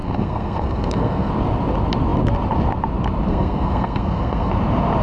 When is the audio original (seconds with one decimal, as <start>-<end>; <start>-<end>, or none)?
1.3-3.3; 4.5-5.0